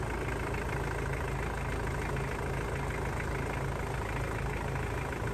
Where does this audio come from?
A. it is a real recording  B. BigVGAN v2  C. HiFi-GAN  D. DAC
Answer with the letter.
A